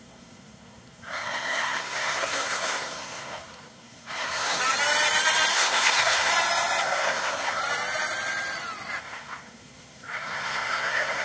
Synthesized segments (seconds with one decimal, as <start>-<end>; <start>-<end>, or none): 0.0-4.6; 5.5-6.3; 6.8-7.6; 9.0-11.2